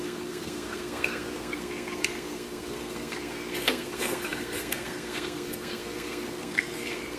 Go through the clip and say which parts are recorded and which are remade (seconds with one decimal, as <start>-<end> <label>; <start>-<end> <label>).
0.0-7.2 remade

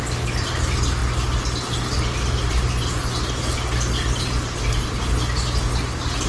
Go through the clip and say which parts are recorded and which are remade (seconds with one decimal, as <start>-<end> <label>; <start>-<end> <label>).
0.0-6.3 recorded

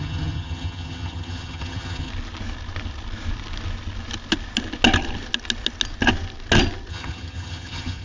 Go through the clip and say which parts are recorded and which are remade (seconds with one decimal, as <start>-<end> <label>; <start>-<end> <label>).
0.0-2.1 remade; 2.1-6.9 recorded; 6.9-8.0 remade

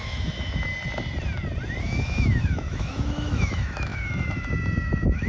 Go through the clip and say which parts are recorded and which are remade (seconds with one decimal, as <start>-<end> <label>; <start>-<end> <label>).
0.0-0.7 remade; 0.7-1.8 recorded; 1.8-5.3 remade

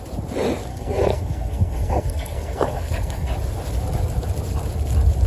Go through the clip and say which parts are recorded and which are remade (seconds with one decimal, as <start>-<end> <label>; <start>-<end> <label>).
0.0-0.7 recorded; 0.7-3.3 remade; 3.3-5.3 recorded